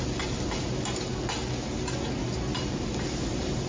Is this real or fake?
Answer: real